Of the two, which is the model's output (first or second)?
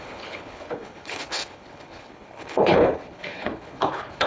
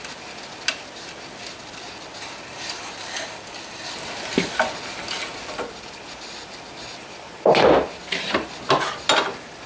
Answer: first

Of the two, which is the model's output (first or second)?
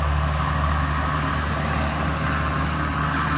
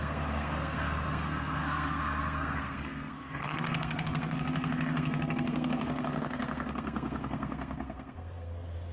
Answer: second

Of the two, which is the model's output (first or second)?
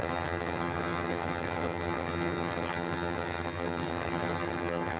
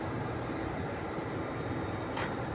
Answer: first